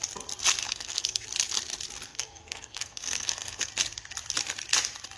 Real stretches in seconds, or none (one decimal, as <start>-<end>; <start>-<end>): 0.0-0.6; 1.2-2.1; 3.7-5.2